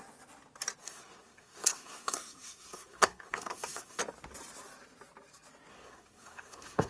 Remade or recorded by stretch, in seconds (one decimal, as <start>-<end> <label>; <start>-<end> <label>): 0.0-0.8 recorded; 0.8-4.0 remade; 4.0-5.7 recorded; 5.7-6.9 remade

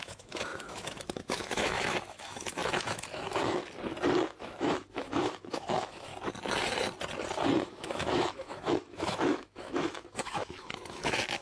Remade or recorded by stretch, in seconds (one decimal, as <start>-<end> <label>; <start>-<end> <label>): 0.0-3.6 remade; 3.6-4.4 recorded; 4.4-6.1 remade; 6.1-7.6 recorded; 7.6-11.4 remade

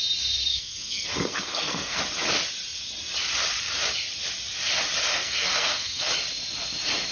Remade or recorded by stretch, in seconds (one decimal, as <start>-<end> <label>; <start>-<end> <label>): 0.0-0.5 recorded; 0.5-2.0 remade; 2.0-5.1 recorded; 5.1-6.1 remade; 6.1-7.1 recorded

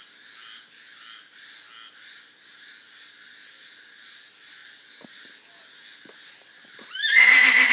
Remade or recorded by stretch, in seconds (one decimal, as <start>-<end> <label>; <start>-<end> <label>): 0.0-7.7 recorded

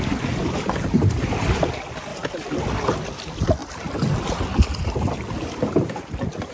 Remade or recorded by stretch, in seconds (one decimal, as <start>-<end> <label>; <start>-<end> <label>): 0.0-0.4 recorded; 0.4-1.7 remade; 1.7-2.1 recorded; 2.1-2.6 remade; 2.6-6.5 recorded

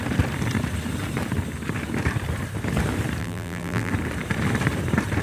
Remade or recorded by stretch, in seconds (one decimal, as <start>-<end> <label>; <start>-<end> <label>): 0.0-3.2 recorded; 3.2-3.9 remade; 3.9-5.2 recorded

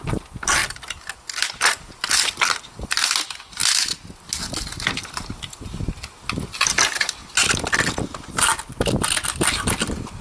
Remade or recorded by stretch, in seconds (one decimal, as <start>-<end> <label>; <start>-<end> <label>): 0.0-10.2 recorded